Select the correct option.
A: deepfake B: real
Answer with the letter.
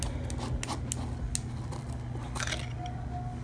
B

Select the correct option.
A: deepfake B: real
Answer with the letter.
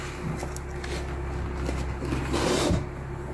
B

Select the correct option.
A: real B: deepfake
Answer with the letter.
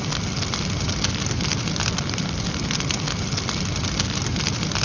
A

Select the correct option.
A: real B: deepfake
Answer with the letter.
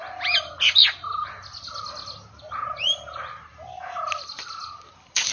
A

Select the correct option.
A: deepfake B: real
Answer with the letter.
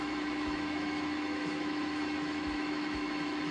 A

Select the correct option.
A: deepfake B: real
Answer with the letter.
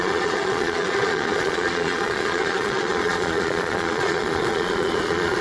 A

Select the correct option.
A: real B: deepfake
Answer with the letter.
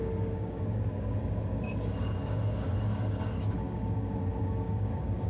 B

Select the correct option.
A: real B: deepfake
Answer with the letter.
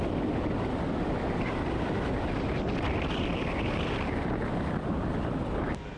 A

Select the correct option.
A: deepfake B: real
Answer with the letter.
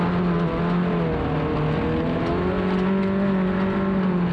B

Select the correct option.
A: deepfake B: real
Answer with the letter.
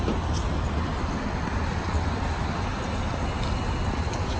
B